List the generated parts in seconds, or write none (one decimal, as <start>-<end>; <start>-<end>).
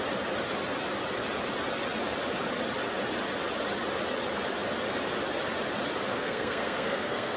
6.1-7.4